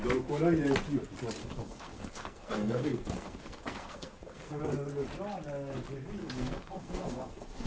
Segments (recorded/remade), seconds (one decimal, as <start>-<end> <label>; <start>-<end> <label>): 0.0-1.4 recorded; 1.4-4.6 remade; 4.6-6.2 recorded; 6.2-7.7 remade